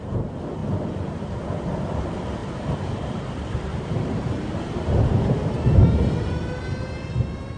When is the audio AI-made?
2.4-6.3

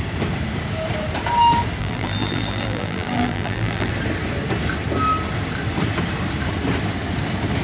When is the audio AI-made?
1.8-3.9

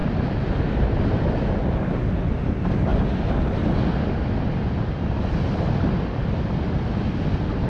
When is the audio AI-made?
0.0-1.2

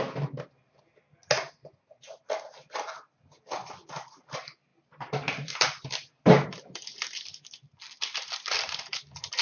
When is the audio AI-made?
4.7-7.5

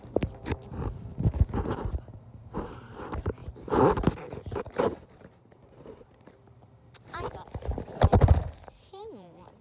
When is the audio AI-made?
0.0-1.1; 1.7-9.6

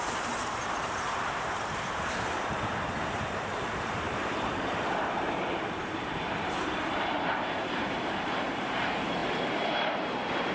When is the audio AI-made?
0.0-10.5